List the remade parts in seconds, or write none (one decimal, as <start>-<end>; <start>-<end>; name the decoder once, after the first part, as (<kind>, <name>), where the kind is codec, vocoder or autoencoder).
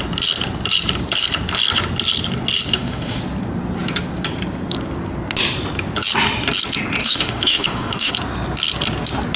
2.7-3.2 (autoencoder, DAC-VAE); 7.0-8.1